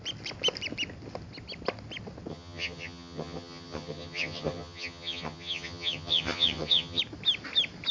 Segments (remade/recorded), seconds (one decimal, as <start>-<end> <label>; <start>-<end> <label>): 0.0-2.3 recorded; 2.3-7.0 remade; 7.0-7.9 recorded